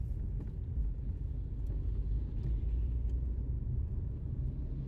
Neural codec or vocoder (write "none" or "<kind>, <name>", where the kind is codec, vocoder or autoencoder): none